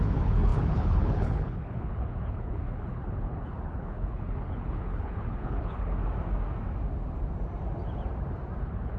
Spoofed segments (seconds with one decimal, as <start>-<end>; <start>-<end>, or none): 0.0-6.0; 8.6-9.0